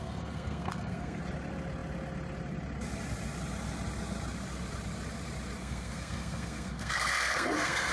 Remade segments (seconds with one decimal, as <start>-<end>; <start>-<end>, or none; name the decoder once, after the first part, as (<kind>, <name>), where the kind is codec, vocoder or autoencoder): 0.0-1.2 (codec, SNAC); 5.6-7.9